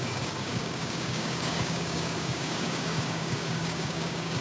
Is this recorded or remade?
remade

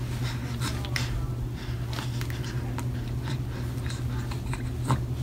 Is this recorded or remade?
recorded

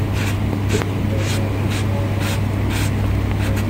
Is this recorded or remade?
recorded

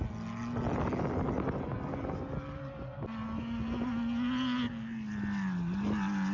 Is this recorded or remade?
recorded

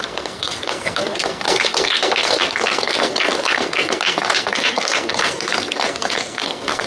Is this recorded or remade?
remade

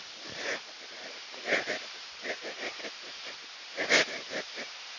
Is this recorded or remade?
recorded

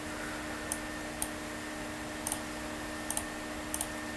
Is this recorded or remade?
recorded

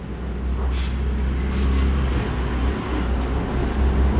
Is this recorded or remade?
recorded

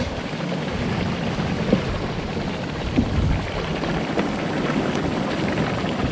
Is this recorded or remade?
recorded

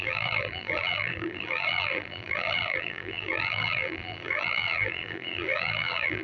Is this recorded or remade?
remade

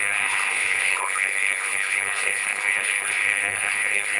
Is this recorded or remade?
remade